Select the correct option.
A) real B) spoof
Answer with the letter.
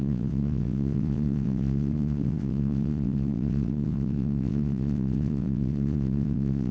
B